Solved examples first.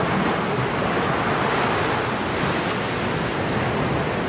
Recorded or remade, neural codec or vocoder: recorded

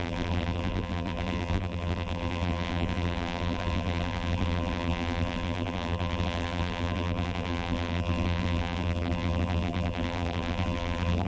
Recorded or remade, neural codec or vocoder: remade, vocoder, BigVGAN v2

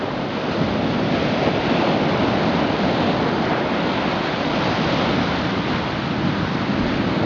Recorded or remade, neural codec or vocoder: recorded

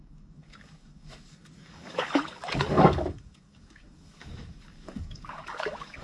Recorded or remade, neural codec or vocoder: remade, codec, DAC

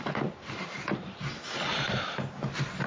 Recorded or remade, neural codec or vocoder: recorded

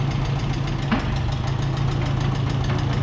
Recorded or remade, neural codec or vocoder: recorded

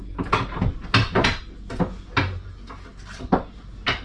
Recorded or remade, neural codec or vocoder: recorded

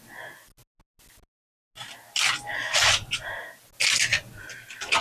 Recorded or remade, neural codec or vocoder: recorded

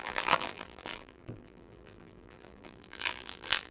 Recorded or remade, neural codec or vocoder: remade, vocoder, BigVGAN v2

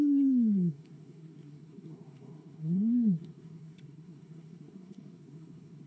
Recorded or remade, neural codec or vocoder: remade, codec, SNAC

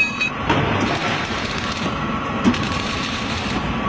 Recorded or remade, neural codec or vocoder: remade, vocoder, BigVGAN v2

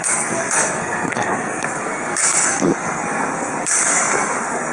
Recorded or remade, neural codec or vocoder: remade, codec, SNAC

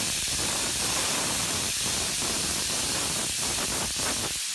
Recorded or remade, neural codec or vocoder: remade, vocoder, BigVGAN v2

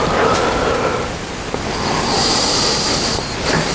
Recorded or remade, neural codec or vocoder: recorded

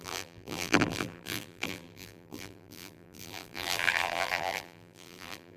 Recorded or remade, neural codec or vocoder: remade, vocoder, BigVGAN v2